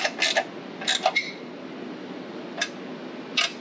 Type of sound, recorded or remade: recorded